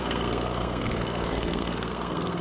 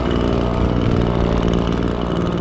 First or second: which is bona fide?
second